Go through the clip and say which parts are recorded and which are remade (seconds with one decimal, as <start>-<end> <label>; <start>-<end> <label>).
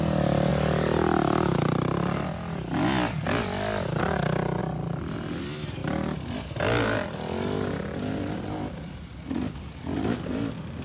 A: 0.0-10.8 recorded